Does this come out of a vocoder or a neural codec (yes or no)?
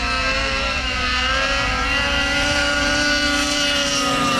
yes